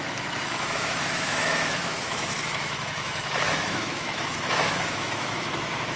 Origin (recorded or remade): remade